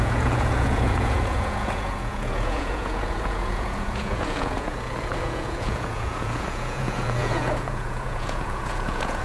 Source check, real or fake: fake